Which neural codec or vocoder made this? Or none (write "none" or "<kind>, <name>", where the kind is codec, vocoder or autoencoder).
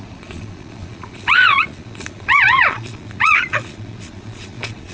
vocoder, Vocos